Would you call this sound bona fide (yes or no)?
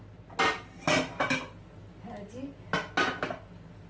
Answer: yes